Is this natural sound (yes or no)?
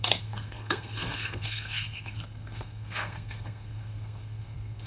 no